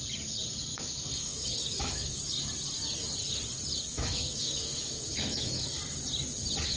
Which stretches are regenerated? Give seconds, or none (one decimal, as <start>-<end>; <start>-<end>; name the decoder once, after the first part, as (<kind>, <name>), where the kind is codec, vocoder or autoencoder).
0.7-2.2 (autoencoder, DAC-VAE); 3.9-5.8